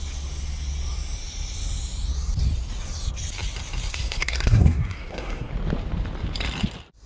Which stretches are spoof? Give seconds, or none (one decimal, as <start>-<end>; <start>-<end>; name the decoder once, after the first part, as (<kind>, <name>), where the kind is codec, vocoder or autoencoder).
3.9-5.5 (codec, SNAC)